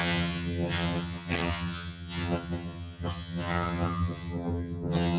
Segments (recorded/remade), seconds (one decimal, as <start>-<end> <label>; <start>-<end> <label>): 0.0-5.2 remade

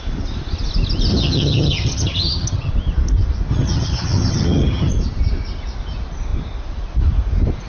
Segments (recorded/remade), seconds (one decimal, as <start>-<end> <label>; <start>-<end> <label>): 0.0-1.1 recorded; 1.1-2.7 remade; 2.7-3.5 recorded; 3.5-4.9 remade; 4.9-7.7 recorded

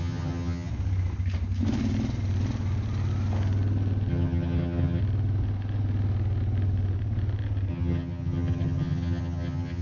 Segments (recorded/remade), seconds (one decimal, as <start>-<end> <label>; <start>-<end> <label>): 0.0-0.7 remade; 0.7-4.1 recorded; 4.1-5.0 remade; 5.0-7.7 recorded; 7.7-9.8 remade